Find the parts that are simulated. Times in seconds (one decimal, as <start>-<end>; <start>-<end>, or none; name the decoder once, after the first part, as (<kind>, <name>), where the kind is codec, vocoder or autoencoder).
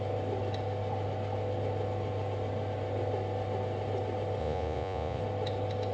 4.4-5.2 (vocoder, Vocos)